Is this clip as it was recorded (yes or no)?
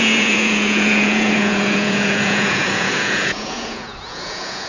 no